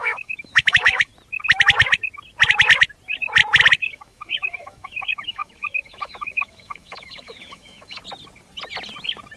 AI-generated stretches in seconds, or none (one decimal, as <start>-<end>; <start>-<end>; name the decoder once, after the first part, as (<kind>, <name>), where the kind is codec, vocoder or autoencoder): 0.0-1.1 (autoencoder, DAC-VAE); 3.8-8.0